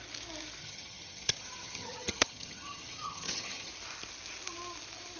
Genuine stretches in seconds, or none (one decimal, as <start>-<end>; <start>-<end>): 0.0-0.6; 3.7-5.2